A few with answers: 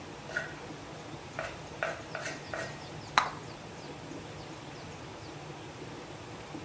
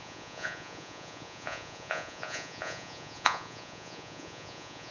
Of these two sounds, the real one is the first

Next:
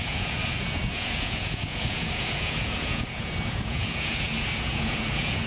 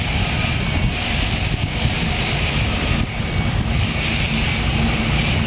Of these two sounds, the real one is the second